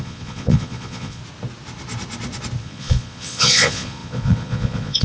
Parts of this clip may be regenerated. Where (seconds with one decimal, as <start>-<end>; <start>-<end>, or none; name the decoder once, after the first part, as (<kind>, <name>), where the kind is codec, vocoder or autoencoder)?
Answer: 0.0-1.2 (vocoder, Vocos); 2.6-5.0